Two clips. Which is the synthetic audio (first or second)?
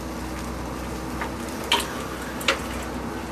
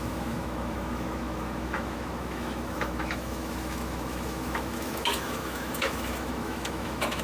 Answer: second